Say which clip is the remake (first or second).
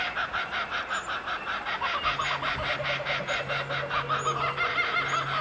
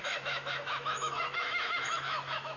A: second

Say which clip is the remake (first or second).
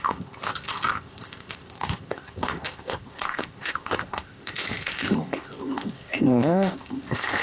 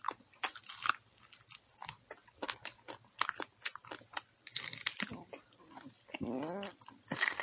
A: first